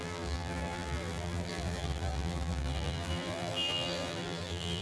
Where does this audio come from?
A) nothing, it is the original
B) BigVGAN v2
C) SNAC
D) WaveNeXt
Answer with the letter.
B